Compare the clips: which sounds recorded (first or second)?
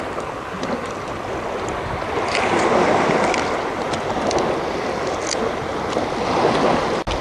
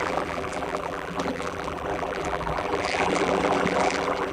first